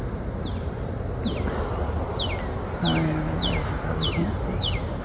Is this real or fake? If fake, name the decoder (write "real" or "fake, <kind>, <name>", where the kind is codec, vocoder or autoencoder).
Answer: real